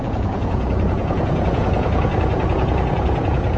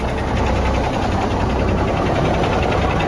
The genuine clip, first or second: second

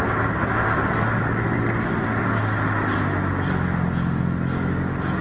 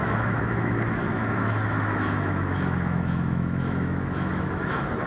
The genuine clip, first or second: first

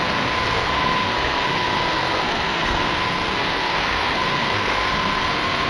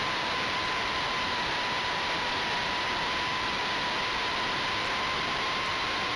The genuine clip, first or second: second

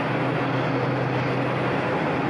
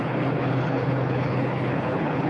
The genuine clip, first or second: first